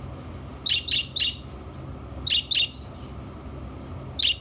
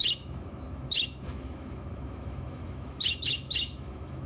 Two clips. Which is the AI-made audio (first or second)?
second